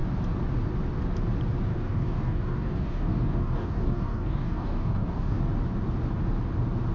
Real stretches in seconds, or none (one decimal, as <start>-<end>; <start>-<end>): 0.0-1.7; 5.4-6.9